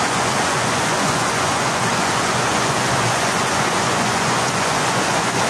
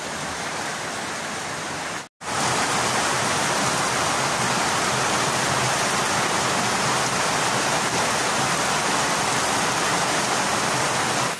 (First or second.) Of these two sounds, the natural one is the second